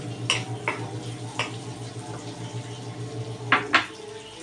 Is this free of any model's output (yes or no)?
yes